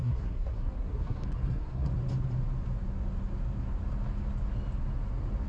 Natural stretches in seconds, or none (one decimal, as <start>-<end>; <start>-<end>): 1.9-5.5